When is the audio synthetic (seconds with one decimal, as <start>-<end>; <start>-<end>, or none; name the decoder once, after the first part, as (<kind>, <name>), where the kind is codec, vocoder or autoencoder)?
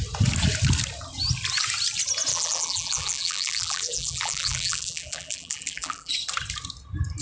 2.3-6.1 (vocoder, BigVGAN v2)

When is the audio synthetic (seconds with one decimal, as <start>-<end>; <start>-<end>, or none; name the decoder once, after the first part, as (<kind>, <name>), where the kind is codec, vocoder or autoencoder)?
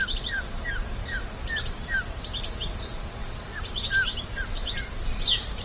4.1-4.9 (vocoder, BigVGAN v2)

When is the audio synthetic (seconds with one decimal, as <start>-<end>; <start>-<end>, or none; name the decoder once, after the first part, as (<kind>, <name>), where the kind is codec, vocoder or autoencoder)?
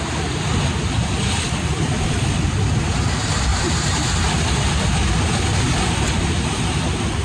0.5-1.2 (vocoder, BigVGAN v2)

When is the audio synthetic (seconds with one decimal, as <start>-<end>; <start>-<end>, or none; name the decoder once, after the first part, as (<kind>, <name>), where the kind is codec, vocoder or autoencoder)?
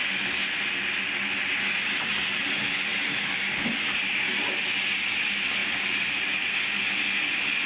2.9-3.8 (vocoder, BigVGAN v2); 5.6-6.8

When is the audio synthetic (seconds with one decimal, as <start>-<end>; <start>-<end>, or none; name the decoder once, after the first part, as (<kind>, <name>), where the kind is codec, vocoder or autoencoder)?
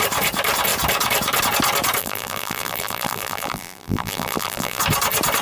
2.0-4.8 (vocoder, BigVGAN v2)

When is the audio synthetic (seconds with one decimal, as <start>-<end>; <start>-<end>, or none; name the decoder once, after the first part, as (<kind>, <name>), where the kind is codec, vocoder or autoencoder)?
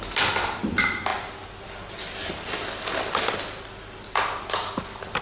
none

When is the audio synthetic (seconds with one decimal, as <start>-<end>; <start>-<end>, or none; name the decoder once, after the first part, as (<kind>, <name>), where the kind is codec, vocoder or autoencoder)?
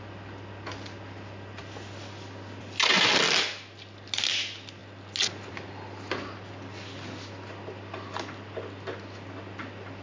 none